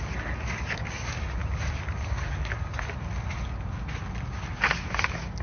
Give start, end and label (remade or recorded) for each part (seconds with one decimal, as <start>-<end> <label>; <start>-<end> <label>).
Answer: 0.0-5.4 recorded